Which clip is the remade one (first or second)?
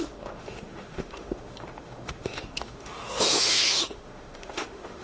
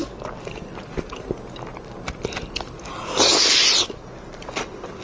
first